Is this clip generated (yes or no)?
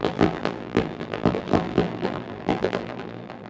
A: yes